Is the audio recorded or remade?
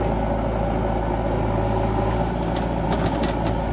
recorded